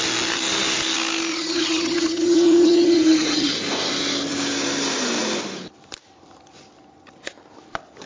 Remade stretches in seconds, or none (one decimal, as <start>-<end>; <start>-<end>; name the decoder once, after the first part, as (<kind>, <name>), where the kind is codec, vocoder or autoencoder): 1.3-3.5 (vocoder, HiFi-GAN)